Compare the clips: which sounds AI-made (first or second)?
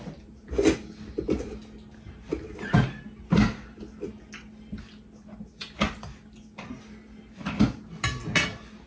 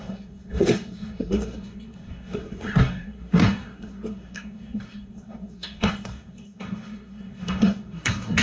second